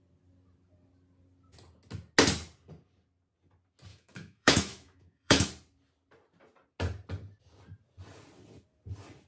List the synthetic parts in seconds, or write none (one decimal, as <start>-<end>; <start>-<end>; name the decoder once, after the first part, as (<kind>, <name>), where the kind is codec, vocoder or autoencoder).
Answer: 3.9-5.5 (autoencoder, DAC-VAE)

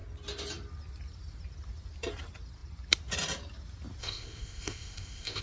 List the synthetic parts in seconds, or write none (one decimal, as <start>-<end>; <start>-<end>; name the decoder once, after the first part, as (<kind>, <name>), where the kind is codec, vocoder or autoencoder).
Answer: 4.0-5.4 (codec, ZipCodec)

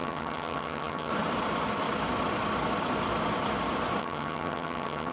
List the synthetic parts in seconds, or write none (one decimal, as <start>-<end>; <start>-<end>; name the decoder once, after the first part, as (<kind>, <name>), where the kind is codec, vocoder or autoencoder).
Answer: 0.0-1.1 (vocoder, HiFi-GAN); 4.0-5.1

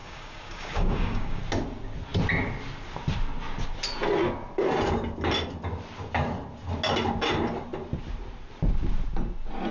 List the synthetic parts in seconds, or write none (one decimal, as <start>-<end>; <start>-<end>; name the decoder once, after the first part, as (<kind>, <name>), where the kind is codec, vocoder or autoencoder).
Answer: 0.0-1.4 (codec, DAC)

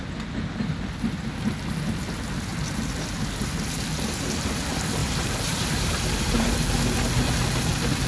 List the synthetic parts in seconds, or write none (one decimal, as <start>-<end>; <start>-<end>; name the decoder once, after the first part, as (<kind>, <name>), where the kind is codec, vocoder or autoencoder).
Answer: 5.0-6.8 (vocoder, BigVGAN v2)

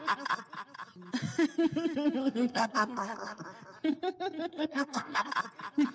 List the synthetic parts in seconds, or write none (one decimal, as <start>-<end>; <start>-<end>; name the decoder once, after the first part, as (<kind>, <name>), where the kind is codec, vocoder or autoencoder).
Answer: 2.2-3.4 (codec, SNAC); 4.5-5.3

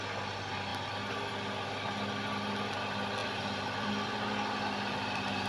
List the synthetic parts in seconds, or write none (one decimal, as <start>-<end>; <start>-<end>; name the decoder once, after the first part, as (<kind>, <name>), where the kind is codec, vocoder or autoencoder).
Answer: 3.2-3.9 (vocoder, BigVGAN v2)

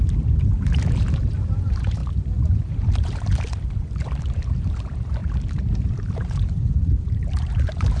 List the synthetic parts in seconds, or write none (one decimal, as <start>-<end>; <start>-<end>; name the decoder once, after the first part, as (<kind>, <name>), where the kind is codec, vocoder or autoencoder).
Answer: 0.0-2.0 (vocoder, BigVGAN v2); 2.7-5.2; 6.0-8.0